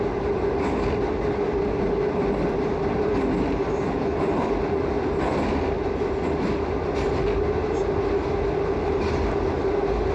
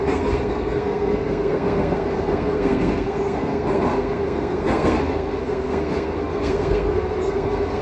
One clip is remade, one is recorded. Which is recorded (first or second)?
first